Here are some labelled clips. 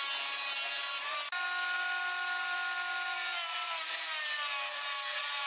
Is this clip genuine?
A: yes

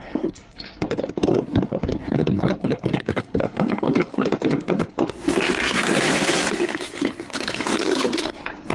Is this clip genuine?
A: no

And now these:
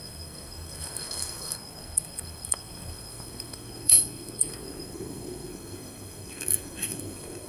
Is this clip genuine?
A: no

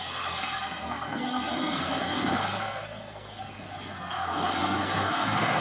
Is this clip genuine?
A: no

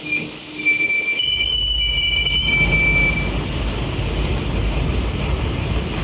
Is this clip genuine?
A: yes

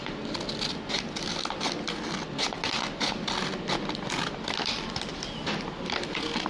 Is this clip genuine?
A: yes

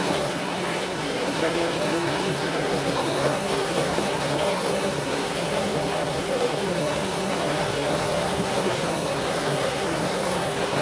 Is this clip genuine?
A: no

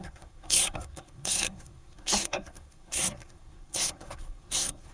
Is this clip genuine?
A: no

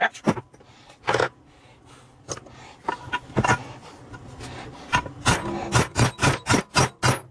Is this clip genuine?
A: yes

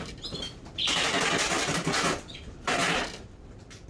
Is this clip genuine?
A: yes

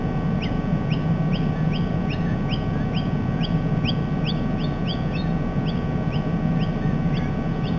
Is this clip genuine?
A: yes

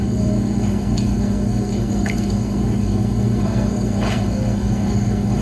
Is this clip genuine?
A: no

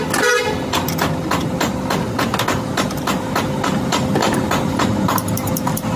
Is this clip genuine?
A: yes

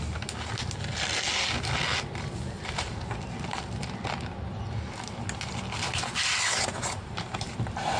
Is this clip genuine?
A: yes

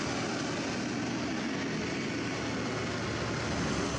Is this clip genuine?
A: yes